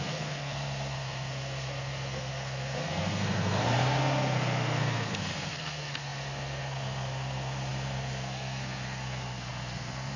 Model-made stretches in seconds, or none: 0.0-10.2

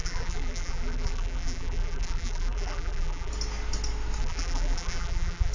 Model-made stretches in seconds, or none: 0.0-3.3; 4.2-5.5

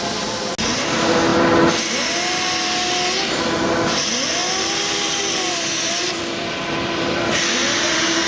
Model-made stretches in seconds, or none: 4.4-7.4

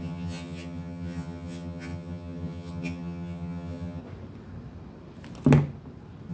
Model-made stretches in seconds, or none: 0.0-4.0

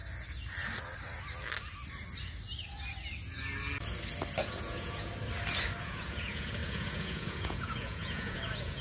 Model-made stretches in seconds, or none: 4.4-5.1; 5.8-8.8

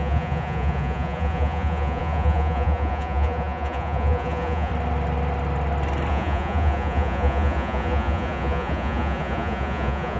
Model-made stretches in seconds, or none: 0.0-4.7; 6.1-10.2